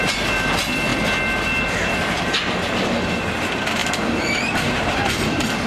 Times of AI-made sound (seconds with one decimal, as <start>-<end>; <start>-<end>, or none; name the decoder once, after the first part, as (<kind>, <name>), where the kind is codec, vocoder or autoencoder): none